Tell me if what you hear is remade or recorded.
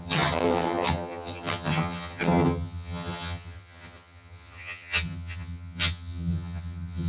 remade